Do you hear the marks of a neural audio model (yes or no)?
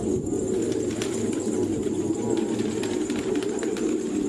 no